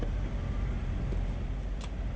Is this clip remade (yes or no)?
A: yes